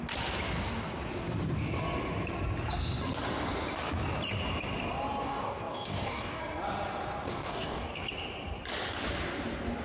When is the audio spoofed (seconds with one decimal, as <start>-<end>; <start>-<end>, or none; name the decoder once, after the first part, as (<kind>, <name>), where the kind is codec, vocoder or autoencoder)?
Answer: 5.2-6.4 (codec, DAC); 7.3-8.0